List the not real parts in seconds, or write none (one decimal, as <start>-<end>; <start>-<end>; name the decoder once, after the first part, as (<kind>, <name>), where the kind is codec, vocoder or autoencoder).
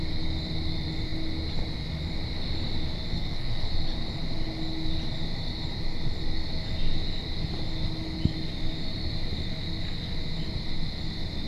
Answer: 3.1-3.7 (codec, SNAC)